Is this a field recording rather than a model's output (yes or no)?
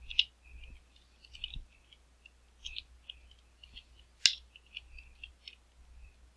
yes